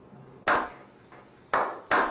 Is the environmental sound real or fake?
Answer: real